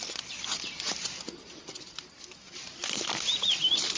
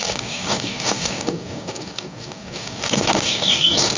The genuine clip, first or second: first